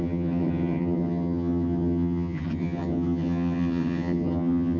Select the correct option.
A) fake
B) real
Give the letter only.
A